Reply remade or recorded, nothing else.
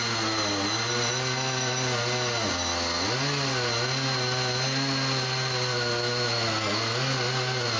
recorded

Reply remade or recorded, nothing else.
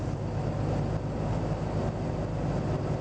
recorded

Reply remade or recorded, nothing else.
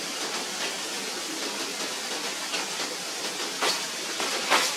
recorded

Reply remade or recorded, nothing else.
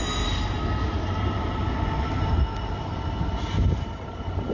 recorded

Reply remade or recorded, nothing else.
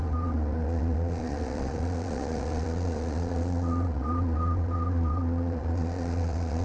remade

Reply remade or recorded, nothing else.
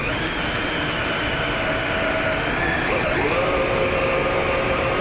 recorded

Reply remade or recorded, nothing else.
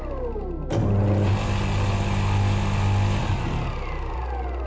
recorded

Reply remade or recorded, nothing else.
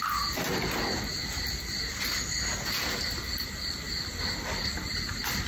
recorded